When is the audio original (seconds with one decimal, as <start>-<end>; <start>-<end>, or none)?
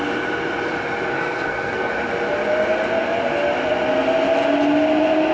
0.0-1.1; 1.9-5.3